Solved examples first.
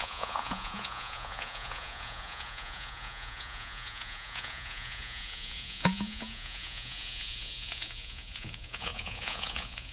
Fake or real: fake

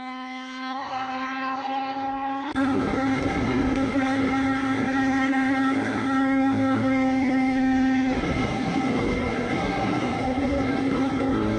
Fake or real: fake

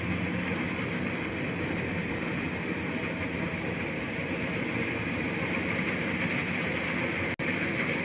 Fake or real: real